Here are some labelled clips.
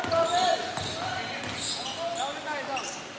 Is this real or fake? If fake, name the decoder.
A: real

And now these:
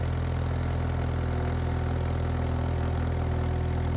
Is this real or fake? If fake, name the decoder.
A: real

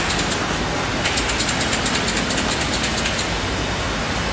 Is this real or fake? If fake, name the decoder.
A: real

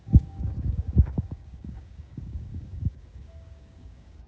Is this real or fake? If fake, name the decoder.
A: fake, codec, DAC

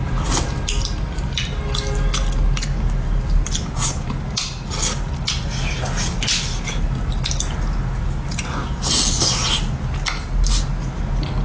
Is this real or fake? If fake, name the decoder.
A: real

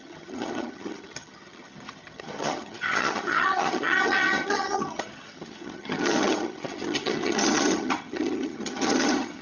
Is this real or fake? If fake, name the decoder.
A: fake, vocoder, HiFi-GAN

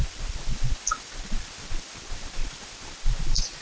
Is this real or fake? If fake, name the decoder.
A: fake, vocoder, BigVGAN v2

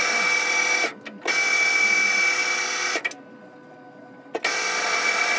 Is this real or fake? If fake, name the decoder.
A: real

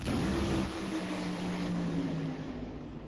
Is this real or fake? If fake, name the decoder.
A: fake, codec, DAC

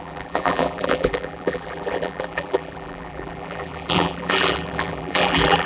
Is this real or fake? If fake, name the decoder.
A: fake, vocoder, BigVGAN v2